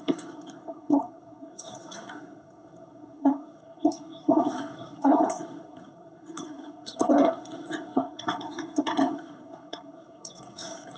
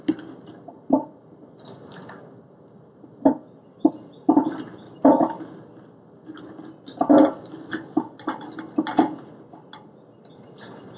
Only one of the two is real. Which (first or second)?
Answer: second